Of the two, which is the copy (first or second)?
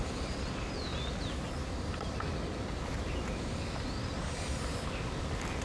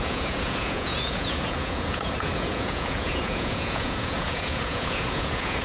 second